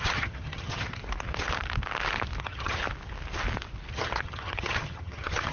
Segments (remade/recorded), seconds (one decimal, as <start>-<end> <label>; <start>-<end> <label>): 0.0-1.0 remade; 1.0-2.4 recorded; 2.4-2.8 remade; 2.8-3.9 recorded; 3.9-5.5 remade